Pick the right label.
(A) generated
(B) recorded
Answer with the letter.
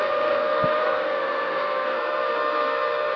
A